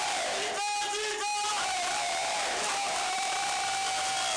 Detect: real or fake real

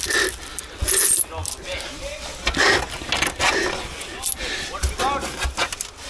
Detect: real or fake real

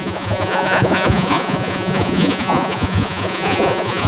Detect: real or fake fake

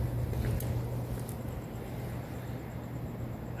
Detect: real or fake real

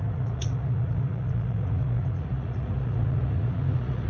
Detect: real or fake fake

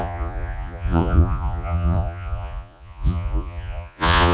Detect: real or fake fake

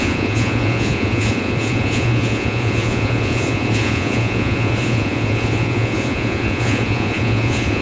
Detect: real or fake fake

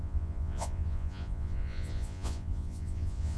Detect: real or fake fake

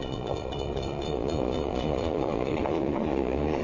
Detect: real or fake fake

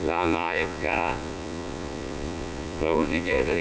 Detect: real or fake fake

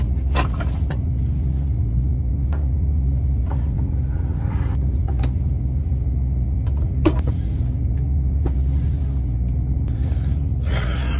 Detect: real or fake fake